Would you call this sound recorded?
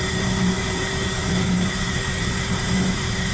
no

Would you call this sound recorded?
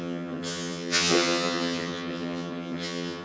no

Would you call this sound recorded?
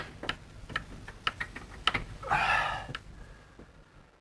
yes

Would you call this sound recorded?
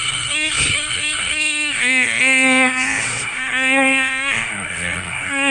no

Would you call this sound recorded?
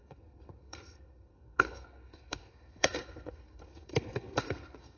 no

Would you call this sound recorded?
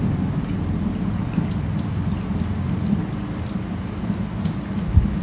yes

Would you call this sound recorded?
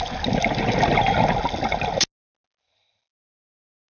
yes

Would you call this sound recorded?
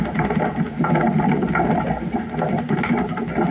yes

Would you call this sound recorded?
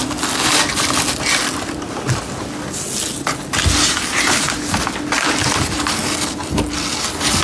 yes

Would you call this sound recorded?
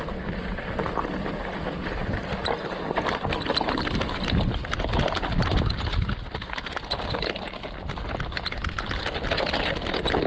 yes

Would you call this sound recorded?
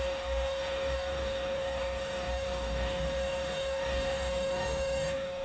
no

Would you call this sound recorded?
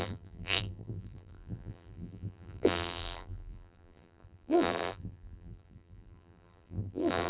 no